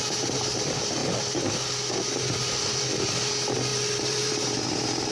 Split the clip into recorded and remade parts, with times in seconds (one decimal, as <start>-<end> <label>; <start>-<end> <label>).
0.0-1.0 recorded; 1.0-1.5 remade; 1.5-3.7 recorded; 3.7-5.1 remade